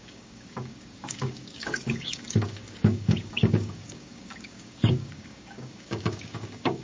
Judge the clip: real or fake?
fake